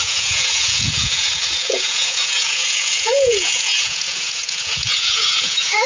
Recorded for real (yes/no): no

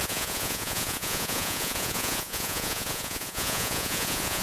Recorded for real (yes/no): no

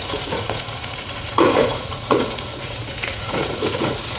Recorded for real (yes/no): no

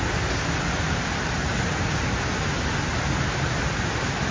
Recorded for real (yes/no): yes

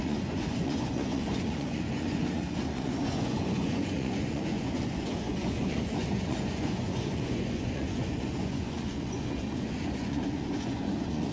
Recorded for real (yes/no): no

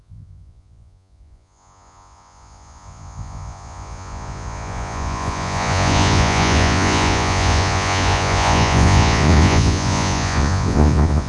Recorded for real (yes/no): no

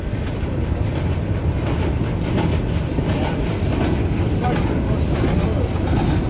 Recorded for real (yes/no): yes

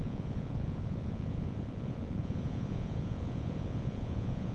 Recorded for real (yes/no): no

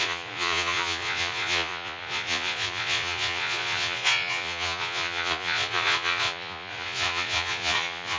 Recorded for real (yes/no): no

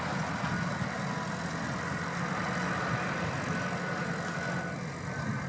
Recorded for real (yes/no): yes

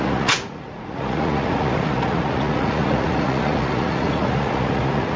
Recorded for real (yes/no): no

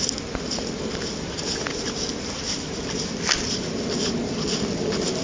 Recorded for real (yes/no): yes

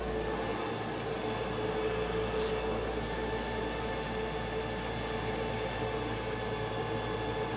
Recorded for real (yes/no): yes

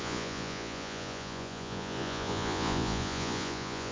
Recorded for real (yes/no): no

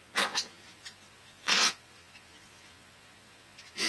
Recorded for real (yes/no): no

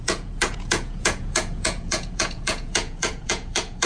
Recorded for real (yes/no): no